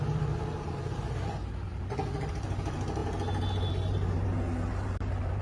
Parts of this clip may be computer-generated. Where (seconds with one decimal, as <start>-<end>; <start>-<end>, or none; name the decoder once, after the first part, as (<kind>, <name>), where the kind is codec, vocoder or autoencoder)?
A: none